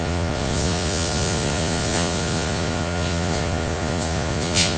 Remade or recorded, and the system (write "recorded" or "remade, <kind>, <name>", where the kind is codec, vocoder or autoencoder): remade, vocoder, Vocos